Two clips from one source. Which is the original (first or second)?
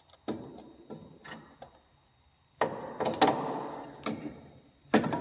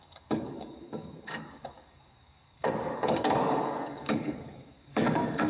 first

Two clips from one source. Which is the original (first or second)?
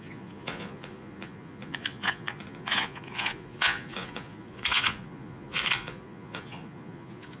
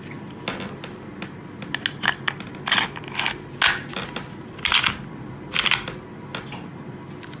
second